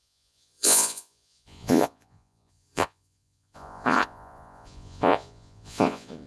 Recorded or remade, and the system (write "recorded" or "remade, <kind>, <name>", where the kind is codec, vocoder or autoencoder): remade, vocoder, Vocos